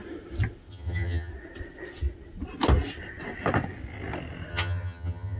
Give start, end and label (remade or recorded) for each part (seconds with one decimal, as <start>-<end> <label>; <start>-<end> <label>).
0.0-0.7 recorded; 0.7-1.3 remade; 1.3-4.5 recorded; 4.5-5.4 remade